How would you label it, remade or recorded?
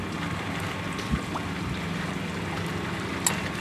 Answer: recorded